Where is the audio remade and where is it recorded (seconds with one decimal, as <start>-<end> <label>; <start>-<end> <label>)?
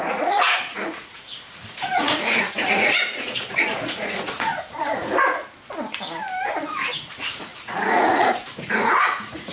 0.0-5.4 remade; 5.4-7.1 recorded; 7.1-9.5 remade